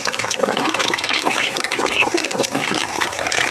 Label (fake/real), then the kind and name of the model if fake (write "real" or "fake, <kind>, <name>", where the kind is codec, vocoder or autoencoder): fake, codec, SNAC